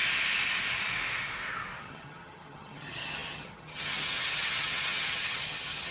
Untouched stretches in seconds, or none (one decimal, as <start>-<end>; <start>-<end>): 0.0-1.8